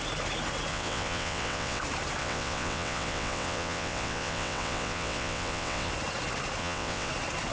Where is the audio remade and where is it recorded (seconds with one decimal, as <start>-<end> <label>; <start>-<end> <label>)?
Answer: 0.0-0.7 recorded; 0.7-1.8 remade; 1.8-2.2 recorded; 2.2-5.9 remade; 5.9-6.6 recorded; 6.6-7.1 remade; 7.1-7.5 recorded

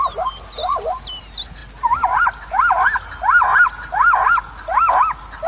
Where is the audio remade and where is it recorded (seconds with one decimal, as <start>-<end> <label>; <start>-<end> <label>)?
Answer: 0.0-5.5 recorded

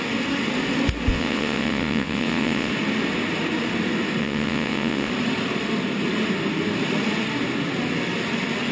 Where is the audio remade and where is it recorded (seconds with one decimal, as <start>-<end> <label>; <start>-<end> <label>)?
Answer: 0.0-1.1 recorded; 1.1-2.7 remade; 2.7-4.2 recorded; 4.2-5.1 remade; 5.1-8.7 recorded

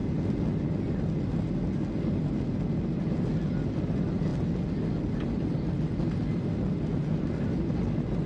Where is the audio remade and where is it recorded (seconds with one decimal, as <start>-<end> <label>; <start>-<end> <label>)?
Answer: 0.0-8.3 recorded

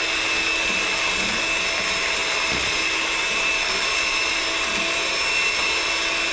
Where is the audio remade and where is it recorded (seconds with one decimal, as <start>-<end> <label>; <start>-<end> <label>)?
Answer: 0.0-6.3 recorded